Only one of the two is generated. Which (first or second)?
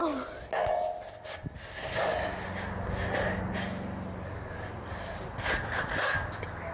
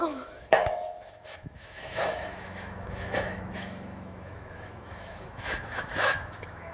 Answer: second